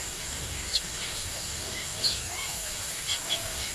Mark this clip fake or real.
fake